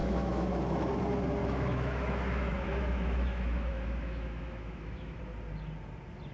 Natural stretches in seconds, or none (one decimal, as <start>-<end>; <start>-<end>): 0.9-1.4; 5.2-6.3